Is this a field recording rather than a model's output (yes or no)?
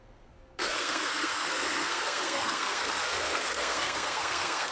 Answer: no